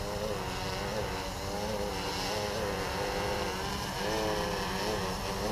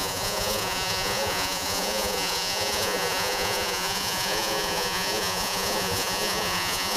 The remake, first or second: second